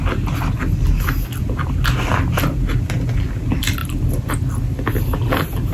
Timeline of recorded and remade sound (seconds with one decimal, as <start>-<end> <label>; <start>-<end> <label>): 0.0-5.7 recorded

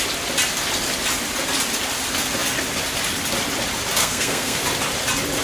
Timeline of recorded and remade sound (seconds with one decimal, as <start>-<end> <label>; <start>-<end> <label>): 0.0-4.0 recorded; 4.0-4.6 remade; 4.6-5.4 recorded